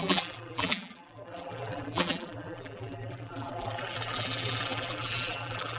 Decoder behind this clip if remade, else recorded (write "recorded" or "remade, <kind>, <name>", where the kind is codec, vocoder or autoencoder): remade, vocoder, BigVGAN v2